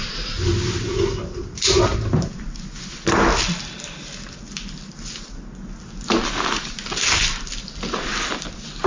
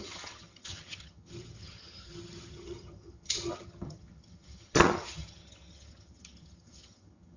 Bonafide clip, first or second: first